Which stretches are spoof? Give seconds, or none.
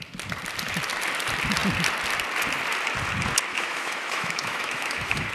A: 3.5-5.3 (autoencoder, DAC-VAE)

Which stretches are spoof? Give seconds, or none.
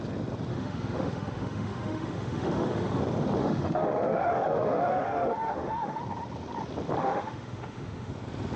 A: 0.5-3.0 (autoencoder, DAC-VAE); 3.4-6.0; 7.0-8.1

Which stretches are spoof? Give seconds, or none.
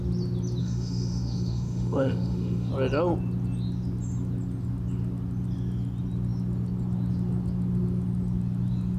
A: 0.6-2.7 (autoencoder, DAC-VAE)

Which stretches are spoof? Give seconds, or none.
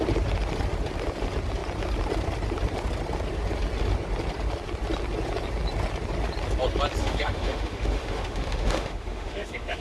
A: 7.0-9.8 (autoencoder, DAC-VAE)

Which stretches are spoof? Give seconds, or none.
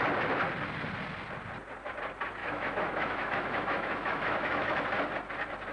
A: 2.4-4.8 (autoencoder, DAC-VAE)